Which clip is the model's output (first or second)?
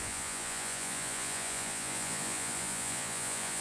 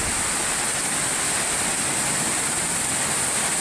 first